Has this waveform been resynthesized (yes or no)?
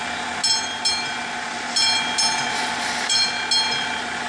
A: no